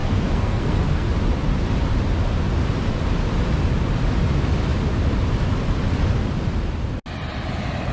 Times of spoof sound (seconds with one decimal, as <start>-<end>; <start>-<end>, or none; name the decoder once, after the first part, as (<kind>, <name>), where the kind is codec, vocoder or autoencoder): 0.0-1.1 (codec, SNAC)